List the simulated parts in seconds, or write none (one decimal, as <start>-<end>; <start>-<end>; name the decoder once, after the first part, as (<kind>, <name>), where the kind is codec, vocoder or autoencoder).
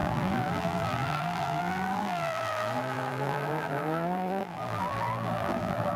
0.0-6.0 (vocoder, BigVGAN v2)